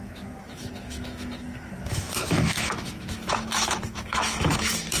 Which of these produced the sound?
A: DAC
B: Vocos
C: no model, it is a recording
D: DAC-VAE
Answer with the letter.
D